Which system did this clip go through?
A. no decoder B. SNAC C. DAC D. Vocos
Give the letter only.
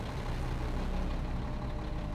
A